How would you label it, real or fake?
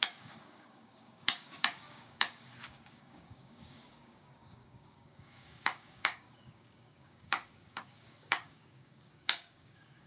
fake